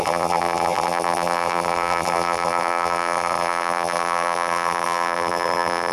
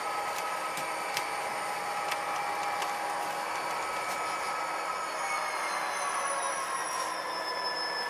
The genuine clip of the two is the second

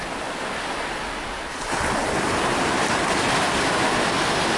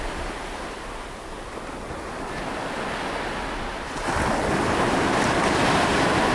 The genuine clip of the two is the second